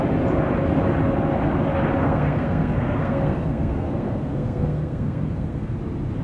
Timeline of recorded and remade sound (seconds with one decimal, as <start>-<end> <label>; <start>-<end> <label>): 0.0-2.0 recorded; 2.0-5.7 remade; 5.7-6.2 recorded